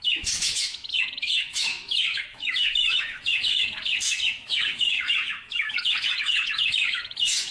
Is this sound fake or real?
fake